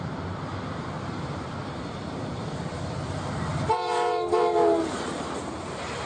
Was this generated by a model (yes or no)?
yes